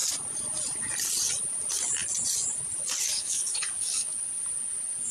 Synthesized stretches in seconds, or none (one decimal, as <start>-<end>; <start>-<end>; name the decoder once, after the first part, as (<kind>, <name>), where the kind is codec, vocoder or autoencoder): 3.1-4.1 (codec, DAC)